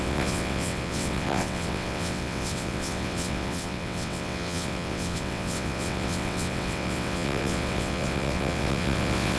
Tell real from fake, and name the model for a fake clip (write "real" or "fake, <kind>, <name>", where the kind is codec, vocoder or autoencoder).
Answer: fake, vocoder, WaveNeXt